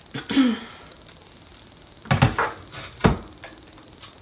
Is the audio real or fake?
real